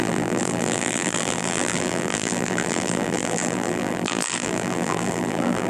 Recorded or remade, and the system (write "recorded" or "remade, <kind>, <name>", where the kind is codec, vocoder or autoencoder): remade, vocoder, BigVGAN v2